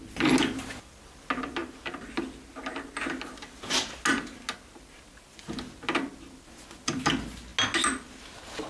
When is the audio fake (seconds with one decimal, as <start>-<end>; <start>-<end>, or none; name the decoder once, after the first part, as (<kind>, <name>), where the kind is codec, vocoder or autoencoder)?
1.6-2.1 (vocoder, BigVGAN v2)